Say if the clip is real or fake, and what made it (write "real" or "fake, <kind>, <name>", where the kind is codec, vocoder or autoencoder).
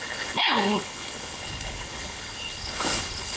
fake, codec, HILCodec